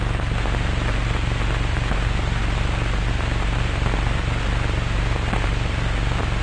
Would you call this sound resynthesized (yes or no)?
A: no